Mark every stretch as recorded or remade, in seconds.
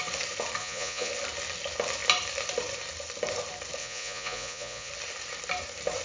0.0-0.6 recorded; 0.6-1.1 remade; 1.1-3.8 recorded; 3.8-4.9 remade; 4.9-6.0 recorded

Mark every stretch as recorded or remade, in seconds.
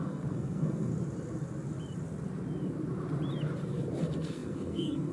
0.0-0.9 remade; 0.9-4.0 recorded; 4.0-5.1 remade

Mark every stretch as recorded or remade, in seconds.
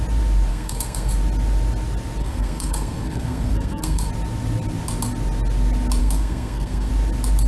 0.0-0.5 recorded; 0.5-1.1 remade; 1.1-2.2 recorded; 2.2-4.1 remade; 4.1-6.0 recorded; 6.0-6.9 remade; 6.9-7.5 recorded